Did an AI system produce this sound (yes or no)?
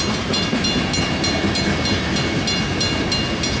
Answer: no